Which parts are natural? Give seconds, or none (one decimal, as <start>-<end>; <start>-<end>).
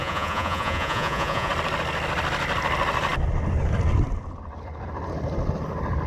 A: 1.5-6.1